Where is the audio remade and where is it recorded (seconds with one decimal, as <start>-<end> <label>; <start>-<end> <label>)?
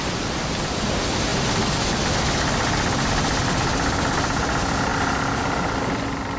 0.0-6.4 recorded